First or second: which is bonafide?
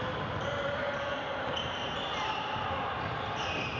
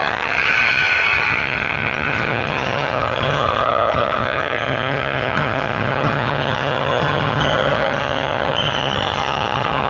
first